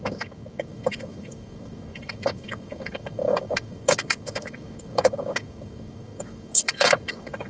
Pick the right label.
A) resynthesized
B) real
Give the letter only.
A